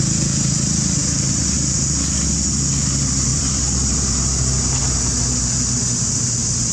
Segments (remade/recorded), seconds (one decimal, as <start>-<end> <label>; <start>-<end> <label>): 0.0-3.3 recorded; 3.3-4.0 remade; 4.0-6.7 recorded